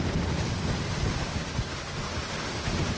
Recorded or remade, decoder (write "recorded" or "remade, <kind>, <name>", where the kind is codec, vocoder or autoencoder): recorded